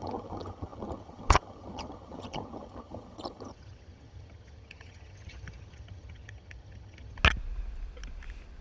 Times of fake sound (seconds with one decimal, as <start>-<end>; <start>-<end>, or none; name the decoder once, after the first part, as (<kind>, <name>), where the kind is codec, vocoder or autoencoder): 0.0-7.2 (vocoder, HiFi-GAN)

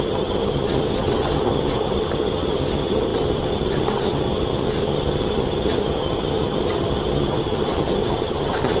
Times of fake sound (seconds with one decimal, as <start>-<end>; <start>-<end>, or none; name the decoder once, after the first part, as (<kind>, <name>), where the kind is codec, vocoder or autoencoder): 0.0-8.8 (vocoder, HiFi-GAN)

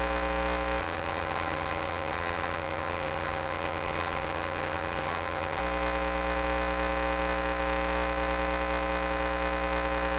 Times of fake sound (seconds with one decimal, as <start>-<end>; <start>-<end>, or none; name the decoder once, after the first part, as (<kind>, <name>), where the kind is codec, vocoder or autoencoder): 0.8-5.6 (vocoder, HiFi-GAN)

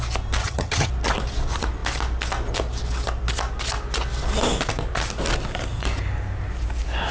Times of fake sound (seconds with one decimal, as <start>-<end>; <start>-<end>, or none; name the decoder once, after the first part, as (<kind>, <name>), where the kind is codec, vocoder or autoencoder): 0.4-0.9 (vocoder, HiFi-GAN)

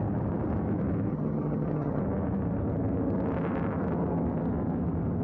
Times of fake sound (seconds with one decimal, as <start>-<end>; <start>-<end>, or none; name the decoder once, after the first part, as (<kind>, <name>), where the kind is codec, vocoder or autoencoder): 1.1-2.0 (vocoder, HiFi-GAN)

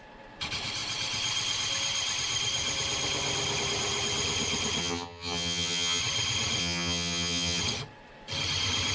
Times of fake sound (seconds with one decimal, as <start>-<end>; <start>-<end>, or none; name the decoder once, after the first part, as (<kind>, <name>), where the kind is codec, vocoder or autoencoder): 4.8-6.0 (vocoder, HiFi-GAN); 6.6-7.6

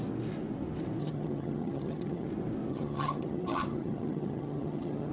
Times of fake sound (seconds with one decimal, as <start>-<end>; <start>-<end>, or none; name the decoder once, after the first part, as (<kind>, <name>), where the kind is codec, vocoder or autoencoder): 1.0-2.3 (vocoder, HiFi-GAN); 2.7-5.1